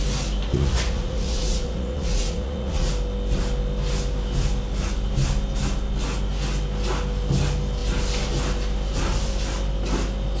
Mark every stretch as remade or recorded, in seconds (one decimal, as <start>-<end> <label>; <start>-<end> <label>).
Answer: 0.0-0.5 recorded; 0.5-2.9 remade; 2.9-10.4 recorded

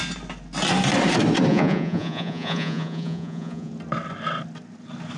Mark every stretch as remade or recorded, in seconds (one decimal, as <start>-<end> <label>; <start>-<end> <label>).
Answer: 0.0-1.5 recorded; 1.5-3.7 remade; 3.7-5.2 recorded

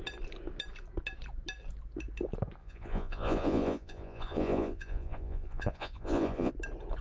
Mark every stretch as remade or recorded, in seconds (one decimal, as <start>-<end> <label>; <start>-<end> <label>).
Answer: 0.0-2.6 recorded; 2.6-6.5 remade; 6.5-7.0 recorded

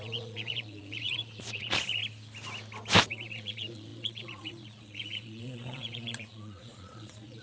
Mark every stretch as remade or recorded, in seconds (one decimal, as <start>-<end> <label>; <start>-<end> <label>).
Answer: 0.0-2.0 remade; 2.0-3.1 recorded; 3.1-7.4 remade

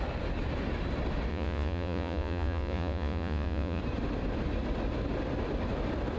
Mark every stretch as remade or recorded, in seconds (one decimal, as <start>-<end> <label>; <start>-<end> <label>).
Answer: 0.0-1.3 recorded; 1.3-3.8 remade; 3.8-6.2 recorded

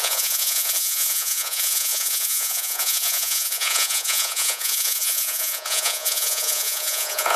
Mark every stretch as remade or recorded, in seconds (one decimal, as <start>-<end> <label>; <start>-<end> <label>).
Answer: 0.0-7.4 remade